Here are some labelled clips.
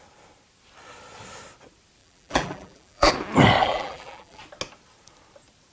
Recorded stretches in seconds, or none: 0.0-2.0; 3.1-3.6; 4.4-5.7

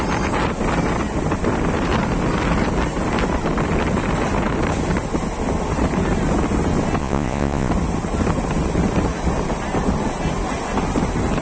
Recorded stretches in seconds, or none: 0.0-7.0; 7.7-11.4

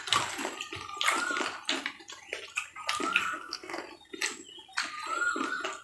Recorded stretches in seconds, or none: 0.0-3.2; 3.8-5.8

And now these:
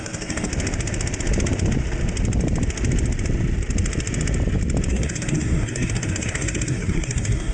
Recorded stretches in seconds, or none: 0.5-4.9

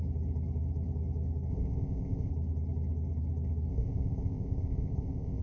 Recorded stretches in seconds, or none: 0.0-1.5; 2.3-3.7

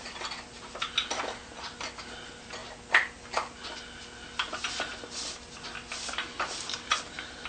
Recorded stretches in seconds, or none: 0.0-7.5

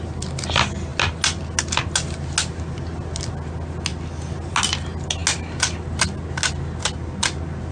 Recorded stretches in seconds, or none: 0.0-7.7